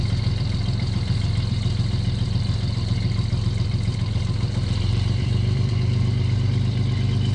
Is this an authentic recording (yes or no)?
no